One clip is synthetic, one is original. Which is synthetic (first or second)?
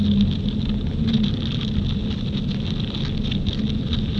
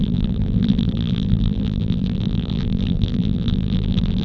second